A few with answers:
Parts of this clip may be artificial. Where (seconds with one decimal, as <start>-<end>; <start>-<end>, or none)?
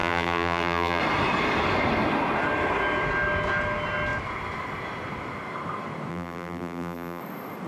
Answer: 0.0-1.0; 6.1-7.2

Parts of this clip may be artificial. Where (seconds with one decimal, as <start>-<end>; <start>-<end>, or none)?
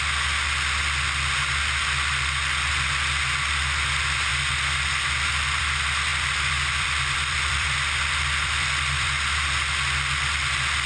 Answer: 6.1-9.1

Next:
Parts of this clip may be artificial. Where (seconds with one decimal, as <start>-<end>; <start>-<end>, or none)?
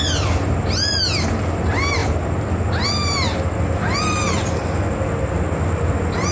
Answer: none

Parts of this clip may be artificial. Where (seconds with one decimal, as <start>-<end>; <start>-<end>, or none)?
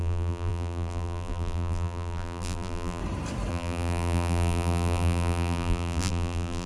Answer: 0.0-3.0; 3.5-6.7